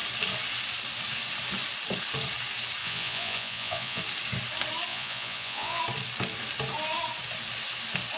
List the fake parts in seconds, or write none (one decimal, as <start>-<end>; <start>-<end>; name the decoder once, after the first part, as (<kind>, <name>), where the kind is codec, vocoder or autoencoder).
2.8-4.0 (vocoder, Vocos); 4.9-5.8